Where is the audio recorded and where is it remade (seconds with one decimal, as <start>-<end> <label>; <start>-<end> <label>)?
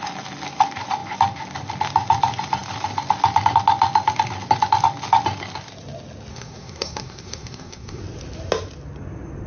0.0-6.3 recorded; 6.3-8.0 remade; 8.0-9.5 recorded